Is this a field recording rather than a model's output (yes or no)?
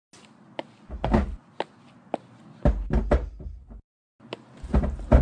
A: yes